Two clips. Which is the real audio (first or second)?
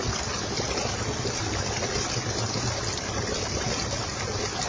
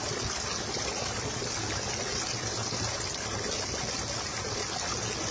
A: second